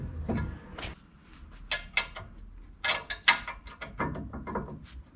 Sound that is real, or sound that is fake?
real